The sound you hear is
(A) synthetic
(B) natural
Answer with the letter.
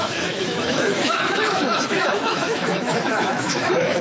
A